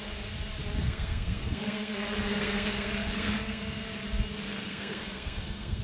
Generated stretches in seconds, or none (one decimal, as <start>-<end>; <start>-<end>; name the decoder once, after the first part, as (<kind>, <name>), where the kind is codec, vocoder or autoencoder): 0.8-3.8 (codec, SNAC); 4.5-5.8